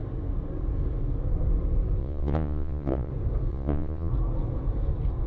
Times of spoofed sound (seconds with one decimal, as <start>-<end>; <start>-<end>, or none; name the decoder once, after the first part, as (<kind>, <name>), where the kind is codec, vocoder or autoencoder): 2.0-3.1 (vocoder, Vocos); 3.5-4.1